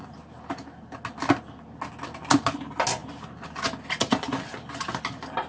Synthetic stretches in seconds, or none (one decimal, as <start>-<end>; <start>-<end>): none